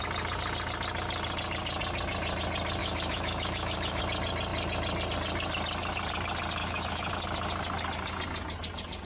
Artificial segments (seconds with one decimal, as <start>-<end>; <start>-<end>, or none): 2.8-4.0; 6.6-7.1

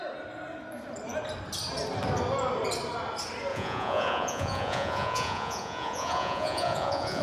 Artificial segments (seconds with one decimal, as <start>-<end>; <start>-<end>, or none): 3.5-7.2

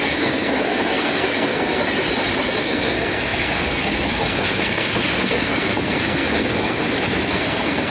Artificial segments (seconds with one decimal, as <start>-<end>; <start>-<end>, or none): 0.0-1.8; 2.6-6.8; 7.3-7.9

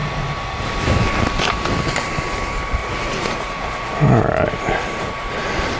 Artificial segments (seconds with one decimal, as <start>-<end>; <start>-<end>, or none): 2.8-3.8

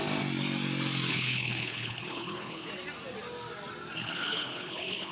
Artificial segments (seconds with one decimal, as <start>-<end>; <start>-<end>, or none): 1.1-2.7; 4.0-5.1

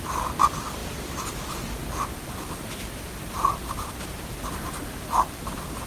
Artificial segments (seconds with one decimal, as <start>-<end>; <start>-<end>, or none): none

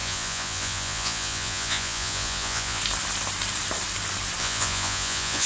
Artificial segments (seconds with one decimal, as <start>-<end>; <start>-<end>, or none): 0.0-2.8; 4.4-5.5